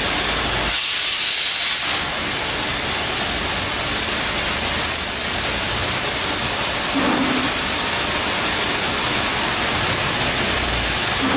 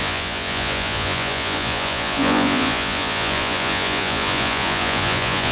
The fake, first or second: second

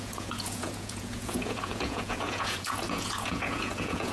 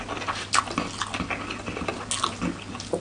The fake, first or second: first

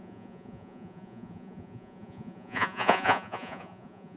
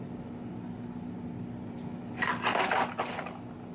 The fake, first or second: first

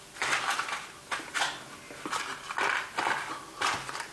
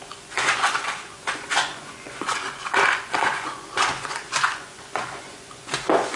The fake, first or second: second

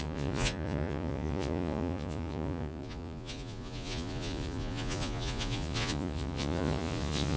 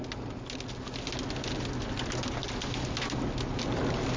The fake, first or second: first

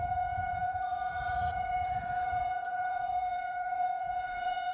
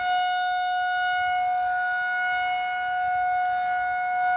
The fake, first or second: first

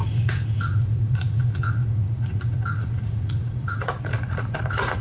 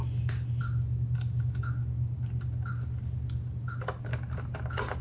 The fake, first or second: first